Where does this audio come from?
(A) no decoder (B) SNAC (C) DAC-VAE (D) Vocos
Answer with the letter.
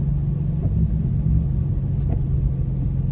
A